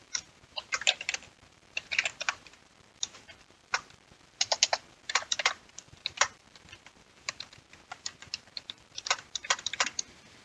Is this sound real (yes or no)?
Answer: no